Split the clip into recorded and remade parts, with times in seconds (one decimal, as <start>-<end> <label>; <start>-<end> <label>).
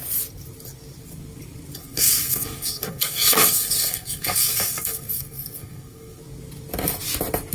0.0-1.8 recorded; 1.8-6.2 remade; 6.2-7.5 recorded